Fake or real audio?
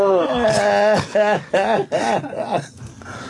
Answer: real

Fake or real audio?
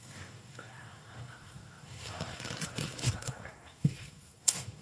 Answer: fake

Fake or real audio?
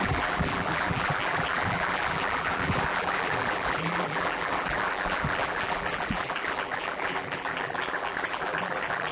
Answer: fake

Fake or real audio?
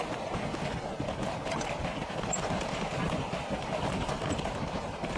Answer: real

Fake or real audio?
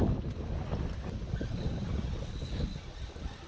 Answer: real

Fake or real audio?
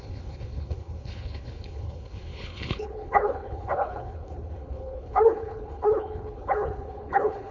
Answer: fake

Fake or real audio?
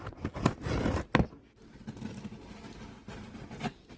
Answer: real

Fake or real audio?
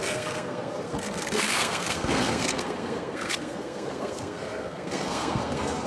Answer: fake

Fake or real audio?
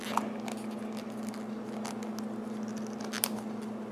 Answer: real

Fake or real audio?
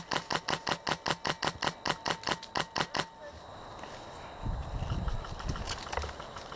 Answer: real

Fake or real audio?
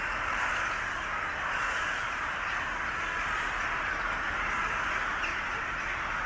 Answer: real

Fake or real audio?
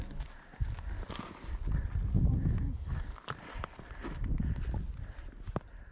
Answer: real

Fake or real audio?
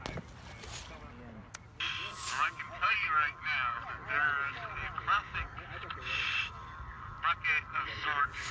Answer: real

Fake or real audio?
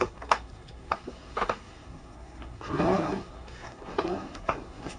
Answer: fake